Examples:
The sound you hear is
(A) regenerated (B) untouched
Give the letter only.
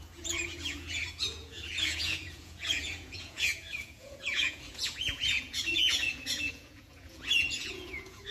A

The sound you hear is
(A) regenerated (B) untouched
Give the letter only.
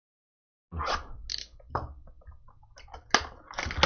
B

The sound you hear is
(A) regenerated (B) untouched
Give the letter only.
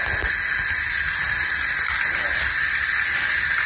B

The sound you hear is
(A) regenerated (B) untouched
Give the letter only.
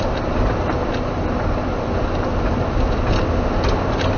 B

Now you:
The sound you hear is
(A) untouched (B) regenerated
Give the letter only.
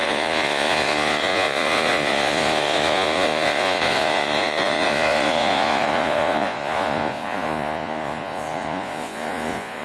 B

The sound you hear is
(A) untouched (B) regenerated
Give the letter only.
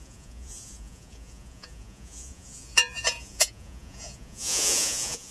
B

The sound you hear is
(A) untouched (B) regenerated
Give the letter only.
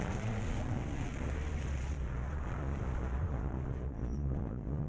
B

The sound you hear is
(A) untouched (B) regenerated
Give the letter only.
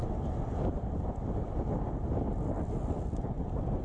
A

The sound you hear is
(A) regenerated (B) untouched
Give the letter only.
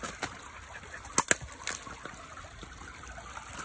B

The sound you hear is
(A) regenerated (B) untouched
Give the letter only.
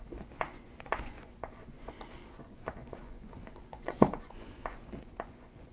A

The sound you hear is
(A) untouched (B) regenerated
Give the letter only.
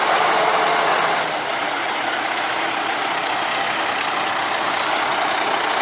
A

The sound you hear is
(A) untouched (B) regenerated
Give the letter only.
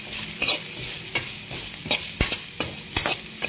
A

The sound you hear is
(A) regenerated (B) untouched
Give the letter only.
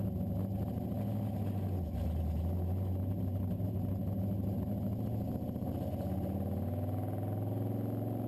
B